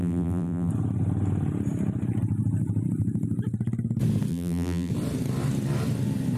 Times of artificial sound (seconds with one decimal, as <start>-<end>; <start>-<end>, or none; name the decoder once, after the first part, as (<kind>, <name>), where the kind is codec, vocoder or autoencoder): 0.0-0.7 (vocoder, BigVGAN v2); 4.3-4.9